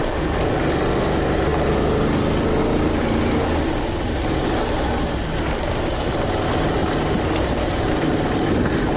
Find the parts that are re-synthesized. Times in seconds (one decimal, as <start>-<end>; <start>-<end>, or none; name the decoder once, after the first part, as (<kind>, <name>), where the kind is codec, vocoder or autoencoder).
6.8-8.5 (vocoder, BigVGAN v2)